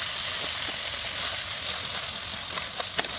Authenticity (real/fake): real